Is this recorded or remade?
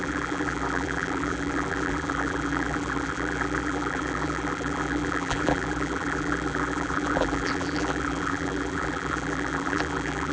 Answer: remade